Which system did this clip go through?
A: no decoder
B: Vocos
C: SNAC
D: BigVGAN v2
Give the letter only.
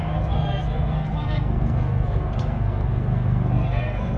C